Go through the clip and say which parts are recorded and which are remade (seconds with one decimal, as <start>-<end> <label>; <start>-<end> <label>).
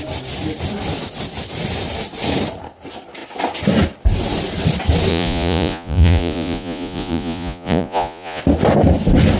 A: 0.0-5.1 recorded; 5.1-8.4 remade; 8.4-9.4 recorded